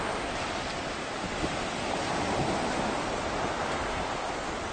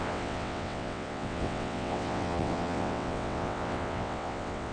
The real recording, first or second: first